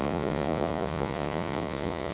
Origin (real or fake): fake